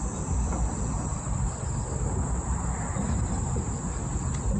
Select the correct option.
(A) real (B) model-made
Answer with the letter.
A